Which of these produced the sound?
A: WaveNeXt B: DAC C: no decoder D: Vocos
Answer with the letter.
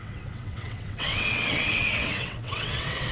A